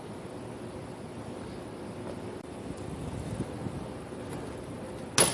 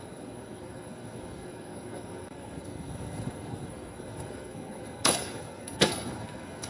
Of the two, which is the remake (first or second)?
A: second